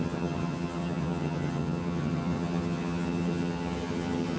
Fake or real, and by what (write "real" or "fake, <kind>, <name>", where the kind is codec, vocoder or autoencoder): fake, vocoder, HiFi-GAN